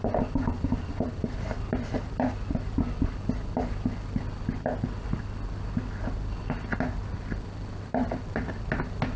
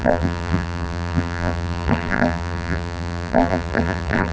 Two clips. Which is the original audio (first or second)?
first